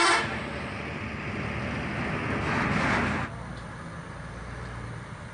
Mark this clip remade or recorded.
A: recorded